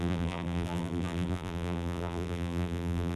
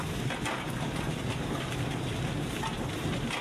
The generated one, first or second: first